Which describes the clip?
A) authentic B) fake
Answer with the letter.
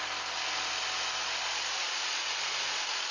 A